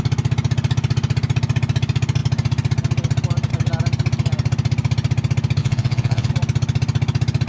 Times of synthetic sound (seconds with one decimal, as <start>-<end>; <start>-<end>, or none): 5.6-6.3